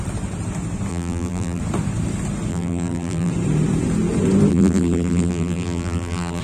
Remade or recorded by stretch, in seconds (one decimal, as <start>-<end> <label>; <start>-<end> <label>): 0.0-0.9 recorded; 0.9-1.6 remade; 1.6-2.5 recorded; 2.5-3.3 remade; 3.3-4.5 recorded; 4.5-6.4 remade